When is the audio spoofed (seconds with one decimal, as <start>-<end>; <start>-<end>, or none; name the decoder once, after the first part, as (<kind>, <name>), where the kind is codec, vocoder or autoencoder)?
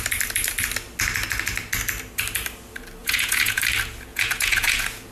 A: 3.0-3.6 (vocoder, Vocos); 4.1-5.1